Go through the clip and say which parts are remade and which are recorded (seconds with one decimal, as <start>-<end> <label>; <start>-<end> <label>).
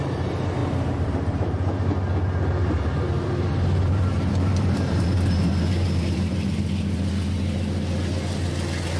0.0-0.6 recorded; 0.6-1.9 remade; 1.9-2.6 recorded; 2.6-6.6 remade; 6.6-9.0 recorded